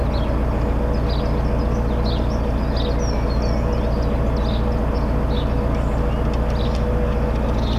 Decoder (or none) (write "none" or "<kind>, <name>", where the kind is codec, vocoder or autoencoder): none